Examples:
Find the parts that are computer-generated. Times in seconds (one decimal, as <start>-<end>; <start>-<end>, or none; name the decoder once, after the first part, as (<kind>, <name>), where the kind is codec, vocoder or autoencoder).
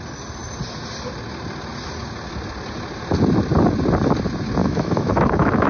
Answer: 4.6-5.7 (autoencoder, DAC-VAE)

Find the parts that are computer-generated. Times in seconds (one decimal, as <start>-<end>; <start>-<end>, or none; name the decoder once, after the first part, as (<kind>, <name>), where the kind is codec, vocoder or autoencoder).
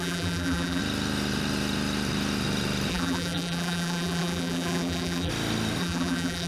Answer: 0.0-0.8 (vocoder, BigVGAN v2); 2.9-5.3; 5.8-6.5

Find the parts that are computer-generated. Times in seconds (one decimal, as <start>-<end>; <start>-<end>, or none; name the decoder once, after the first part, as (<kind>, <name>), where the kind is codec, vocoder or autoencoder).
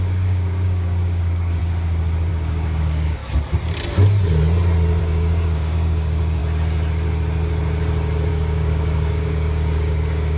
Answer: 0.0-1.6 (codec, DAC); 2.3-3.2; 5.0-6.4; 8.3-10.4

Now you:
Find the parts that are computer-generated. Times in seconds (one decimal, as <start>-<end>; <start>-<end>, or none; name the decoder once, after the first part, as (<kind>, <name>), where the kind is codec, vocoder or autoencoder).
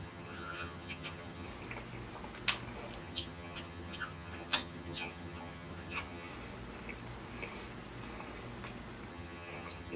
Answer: 0.0-1.5 (vocoder, HiFi-GAN); 3.0-6.3; 9.1-10.0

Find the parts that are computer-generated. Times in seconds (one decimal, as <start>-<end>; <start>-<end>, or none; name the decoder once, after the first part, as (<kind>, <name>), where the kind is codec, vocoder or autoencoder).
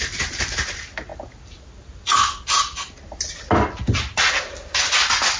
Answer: none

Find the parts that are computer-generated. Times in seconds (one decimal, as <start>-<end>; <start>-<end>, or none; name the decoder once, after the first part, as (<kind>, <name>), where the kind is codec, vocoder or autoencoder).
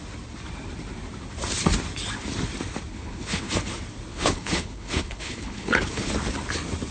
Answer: 2.9-3.5 (codec, HILCodec); 4.1-6.1